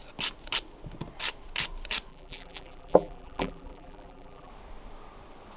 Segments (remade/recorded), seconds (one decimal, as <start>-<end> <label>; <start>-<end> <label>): 0.0-2.1 recorded; 2.1-4.5 remade; 4.5-5.6 recorded